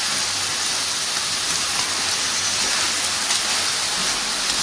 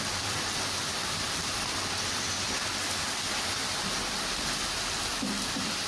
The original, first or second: first